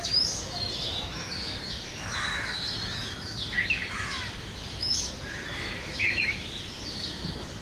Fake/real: fake